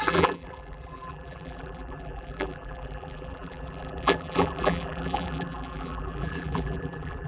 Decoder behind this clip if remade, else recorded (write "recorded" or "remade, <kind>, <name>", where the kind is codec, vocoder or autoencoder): remade, vocoder, BigVGAN v2